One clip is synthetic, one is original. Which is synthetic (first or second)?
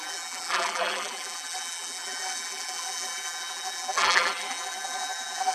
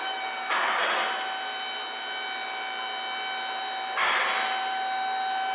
first